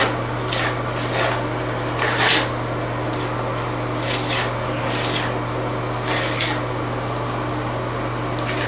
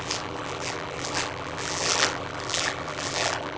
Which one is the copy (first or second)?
second